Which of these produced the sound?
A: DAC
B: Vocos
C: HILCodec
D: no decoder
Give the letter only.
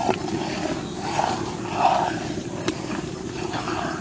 D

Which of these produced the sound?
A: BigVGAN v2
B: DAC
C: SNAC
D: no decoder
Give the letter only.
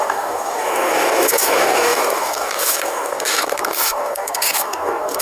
B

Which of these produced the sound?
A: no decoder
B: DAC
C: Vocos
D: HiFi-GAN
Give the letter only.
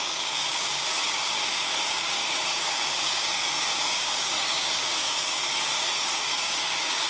B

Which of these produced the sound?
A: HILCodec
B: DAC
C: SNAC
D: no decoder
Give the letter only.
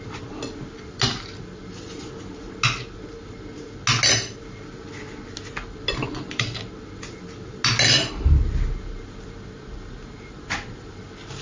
D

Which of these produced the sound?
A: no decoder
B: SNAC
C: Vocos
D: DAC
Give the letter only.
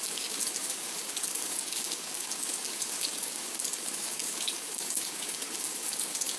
D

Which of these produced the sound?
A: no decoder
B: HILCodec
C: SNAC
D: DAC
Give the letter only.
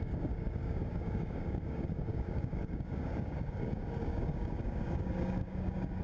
D